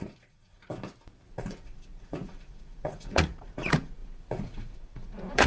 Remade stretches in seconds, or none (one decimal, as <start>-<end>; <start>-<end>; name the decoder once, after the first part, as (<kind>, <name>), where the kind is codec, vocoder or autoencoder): 0.0-0.7 (vocoder, Vocos); 1.3-5.5